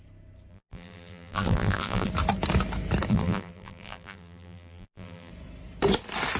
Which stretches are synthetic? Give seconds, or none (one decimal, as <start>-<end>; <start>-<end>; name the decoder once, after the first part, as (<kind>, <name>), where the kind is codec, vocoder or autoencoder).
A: 0.5-2.1 (vocoder, BigVGAN v2); 3.1-5.3